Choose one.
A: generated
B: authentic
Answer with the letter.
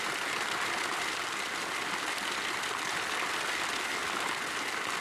B